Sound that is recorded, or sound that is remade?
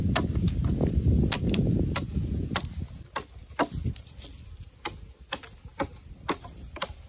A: recorded